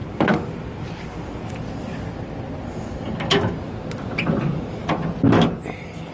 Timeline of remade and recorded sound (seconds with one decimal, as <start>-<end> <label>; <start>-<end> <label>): 0.0-0.6 recorded; 0.6-1.9 remade; 1.9-5.6 recorded; 5.6-6.1 remade

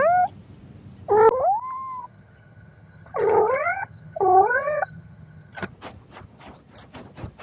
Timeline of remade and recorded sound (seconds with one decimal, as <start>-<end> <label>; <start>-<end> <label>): 0.0-2.0 recorded; 2.0-5.7 remade; 5.7-7.4 recorded

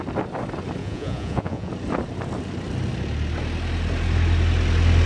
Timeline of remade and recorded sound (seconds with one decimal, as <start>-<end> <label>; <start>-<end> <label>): 0.0-0.8 recorded; 0.8-1.7 remade; 1.7-5.1 recorded

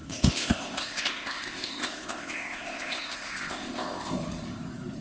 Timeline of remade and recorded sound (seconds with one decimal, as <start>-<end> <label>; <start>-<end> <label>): 0.0-4.2 remade; 4.2-5.0 recorded

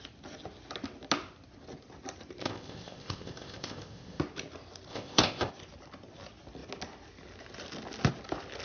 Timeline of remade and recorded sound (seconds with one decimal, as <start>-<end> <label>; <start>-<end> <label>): 0.0-2.4 recorded; 2.4-4.2 remade; 4.2-4.9 recorded; 4.9-5.5 remade; 5.5-8.6 recorded

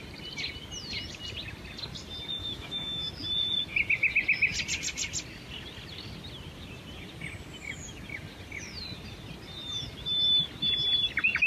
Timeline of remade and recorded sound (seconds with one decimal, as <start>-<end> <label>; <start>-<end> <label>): 0.0-2.4 recorded; 2.4-3.1 remade; 3.1-11.5 recorded

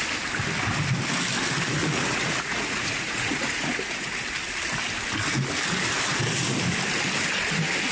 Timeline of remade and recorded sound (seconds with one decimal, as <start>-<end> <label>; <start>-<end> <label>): 0.0-1.8 recorded; 1.8-4.1 remade; 4.1-7.9 recorded